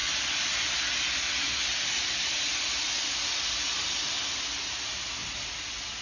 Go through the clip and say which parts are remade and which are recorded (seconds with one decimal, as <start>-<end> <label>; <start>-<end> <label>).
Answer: 0.0-6.0 recorded